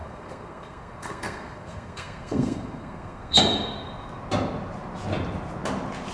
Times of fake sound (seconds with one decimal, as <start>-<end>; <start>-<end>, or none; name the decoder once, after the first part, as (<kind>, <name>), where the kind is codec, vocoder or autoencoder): 0.0-3.4 (codec, SNAC)